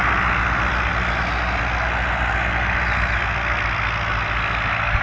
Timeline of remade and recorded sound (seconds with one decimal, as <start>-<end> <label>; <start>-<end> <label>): 0.0-5.0 recorded